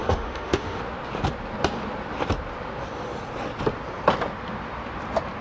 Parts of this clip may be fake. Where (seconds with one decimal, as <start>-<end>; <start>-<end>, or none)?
0.0-0.8